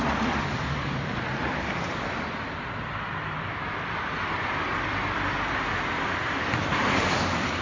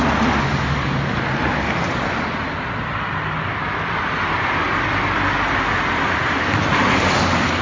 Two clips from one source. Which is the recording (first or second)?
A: second